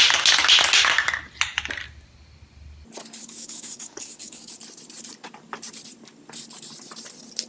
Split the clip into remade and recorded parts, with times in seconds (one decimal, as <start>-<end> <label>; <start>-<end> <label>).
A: 0.0-3.2 recorded; 3.2-4.6 remade; 4.6-7.5 recorded